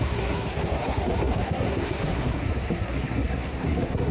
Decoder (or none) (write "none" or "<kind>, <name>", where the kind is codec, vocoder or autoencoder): codec, SNAC